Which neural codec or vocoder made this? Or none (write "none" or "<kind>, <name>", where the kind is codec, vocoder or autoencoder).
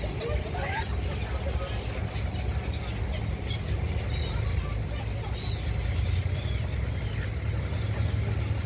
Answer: none